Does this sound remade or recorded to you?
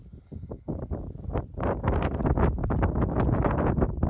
recorded